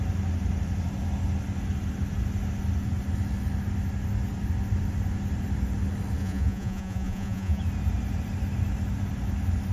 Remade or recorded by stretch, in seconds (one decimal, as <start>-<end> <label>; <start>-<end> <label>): 0.0-6.2 recorded; 6.2-7.6 remade; 7.6-9.7 recorded